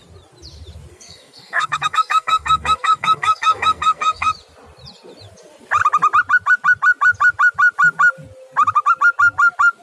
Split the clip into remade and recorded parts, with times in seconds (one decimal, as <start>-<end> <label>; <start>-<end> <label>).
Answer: 0.0-0.9 recorded; 0.9-4.3 remade; 4.3-9.8 recorded